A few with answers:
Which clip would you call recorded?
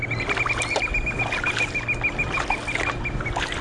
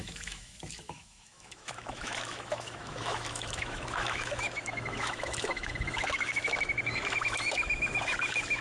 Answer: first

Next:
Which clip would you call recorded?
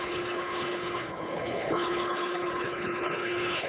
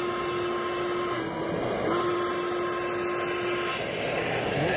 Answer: second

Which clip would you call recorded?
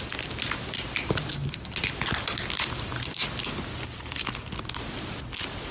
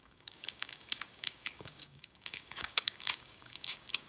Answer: first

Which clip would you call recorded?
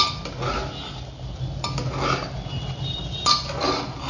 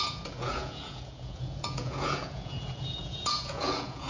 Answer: first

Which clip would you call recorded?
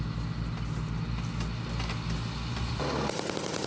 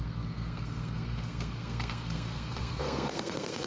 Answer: first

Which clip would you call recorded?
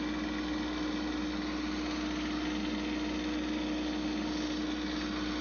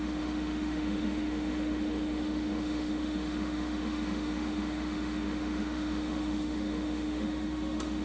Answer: first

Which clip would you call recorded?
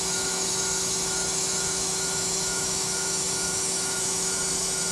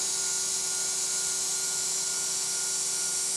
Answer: second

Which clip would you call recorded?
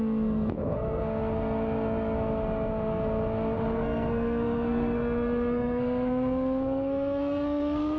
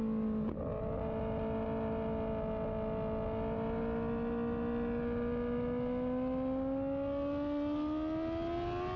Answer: second